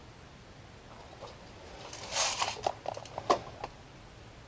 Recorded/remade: recorded